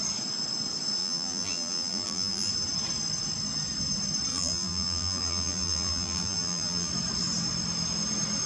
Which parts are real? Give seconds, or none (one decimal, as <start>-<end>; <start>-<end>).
0.0-1.0; 2.5-4.3; 6.9-8.5